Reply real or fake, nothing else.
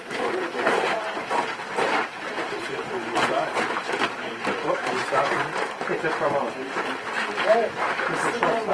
fake